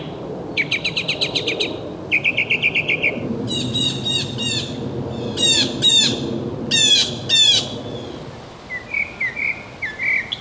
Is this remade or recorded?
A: recorded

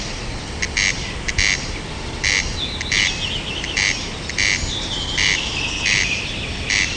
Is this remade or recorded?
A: recorded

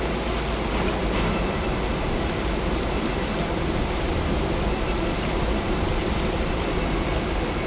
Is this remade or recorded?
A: recorded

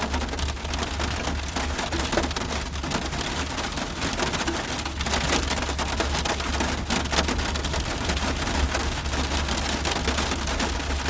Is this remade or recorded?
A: recorded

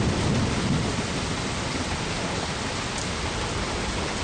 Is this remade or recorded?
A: recorded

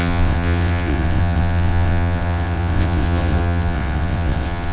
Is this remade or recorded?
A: remade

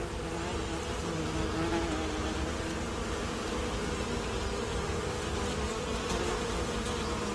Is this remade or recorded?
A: recorded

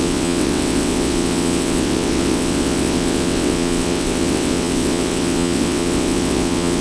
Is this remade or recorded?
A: remade